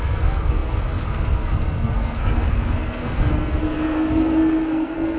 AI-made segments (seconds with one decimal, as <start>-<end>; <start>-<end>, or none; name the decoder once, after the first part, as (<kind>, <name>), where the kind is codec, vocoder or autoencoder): 0.0-5.2 (codec, SNAC)